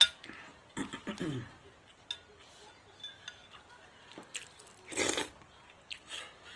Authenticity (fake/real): real